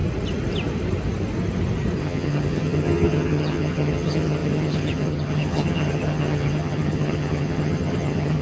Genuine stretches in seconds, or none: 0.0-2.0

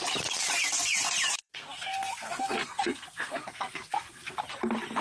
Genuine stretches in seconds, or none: 0.0-1.4; 4.4-5.0

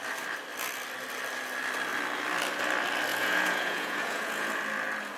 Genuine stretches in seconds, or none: 0.0-3.1; 4.5-5.2